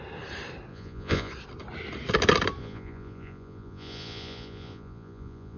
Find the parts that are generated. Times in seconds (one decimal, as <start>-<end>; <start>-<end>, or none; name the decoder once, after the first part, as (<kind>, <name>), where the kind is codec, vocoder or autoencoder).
0.7-1.3 (vocoder, Vocos); 2.6-5.6